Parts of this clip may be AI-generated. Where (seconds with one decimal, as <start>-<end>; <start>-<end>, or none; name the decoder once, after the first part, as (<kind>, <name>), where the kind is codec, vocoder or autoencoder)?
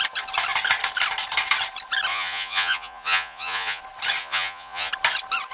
2.1-3.8 (vocoder, Vocos); 4.2-4.9